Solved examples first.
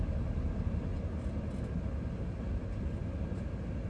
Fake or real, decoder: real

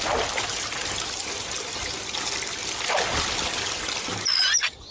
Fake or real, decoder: real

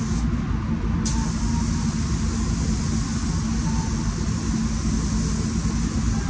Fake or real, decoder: real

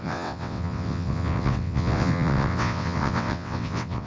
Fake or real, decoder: fake, vocoder, WaveNeXt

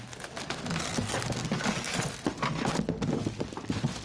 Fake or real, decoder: real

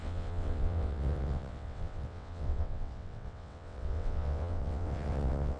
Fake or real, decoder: fake, vocoder, WaveNeXt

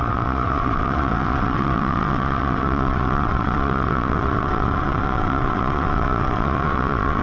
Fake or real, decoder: fake, vocoder, WaveNeXt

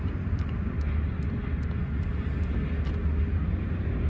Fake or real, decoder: real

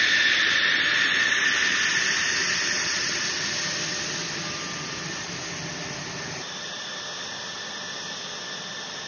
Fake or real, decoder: real